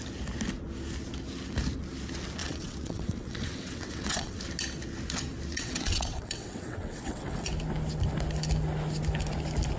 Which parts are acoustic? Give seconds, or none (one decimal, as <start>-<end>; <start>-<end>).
0.0-2.4; 4.4-5.5; 7.5-9.8